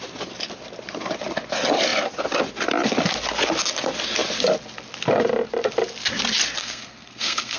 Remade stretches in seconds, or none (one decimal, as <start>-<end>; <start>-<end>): 6.6-7.6